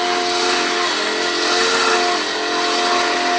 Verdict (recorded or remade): recorded